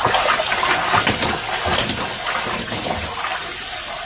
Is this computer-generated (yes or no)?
no